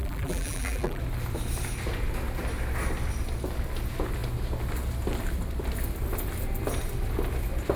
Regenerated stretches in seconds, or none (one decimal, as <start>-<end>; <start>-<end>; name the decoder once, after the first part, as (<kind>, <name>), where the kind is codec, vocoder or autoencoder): 0.0-1.0 (vocoder, BigVGAN v2)